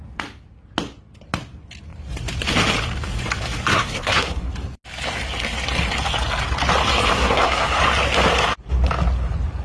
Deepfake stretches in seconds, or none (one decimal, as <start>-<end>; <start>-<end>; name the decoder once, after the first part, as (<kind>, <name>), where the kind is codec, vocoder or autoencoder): 3.7-4.5 (codec, SNAC); 7.1-7.8